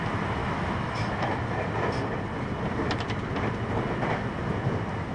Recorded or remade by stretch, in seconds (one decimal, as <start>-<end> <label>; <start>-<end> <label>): 0.0-0.4 recorded; 0.4-1.4 remade; 1.4-5.1 recorded